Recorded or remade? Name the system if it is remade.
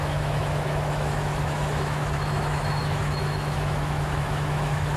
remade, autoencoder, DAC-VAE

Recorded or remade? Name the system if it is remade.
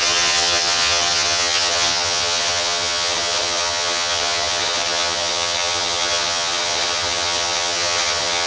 remade, vocoder, HiFi-GAN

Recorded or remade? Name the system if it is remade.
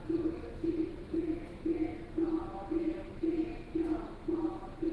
remade, vocoder, BigVGAN v2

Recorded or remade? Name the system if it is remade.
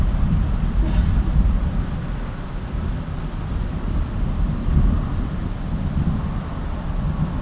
recorded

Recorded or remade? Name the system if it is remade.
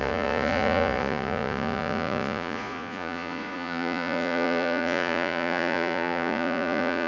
remade, vocoder, Vocos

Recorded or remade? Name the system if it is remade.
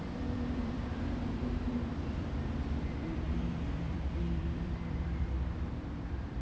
remade, vocoder, BigVGAN v2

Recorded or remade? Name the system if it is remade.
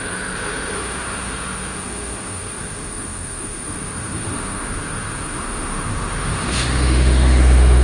remade, autoencoder, DAC-VAE